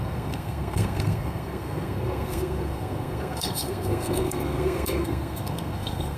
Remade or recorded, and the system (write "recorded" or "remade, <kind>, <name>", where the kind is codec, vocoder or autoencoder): remade, codec, SNAC